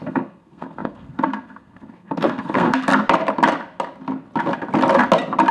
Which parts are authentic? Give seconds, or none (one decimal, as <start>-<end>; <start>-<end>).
2.9-5.5